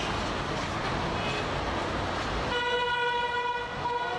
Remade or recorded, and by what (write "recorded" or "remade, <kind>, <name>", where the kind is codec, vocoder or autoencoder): recorded